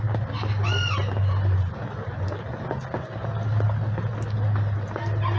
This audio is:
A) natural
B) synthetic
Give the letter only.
A